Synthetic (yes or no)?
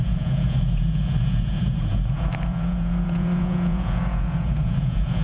yes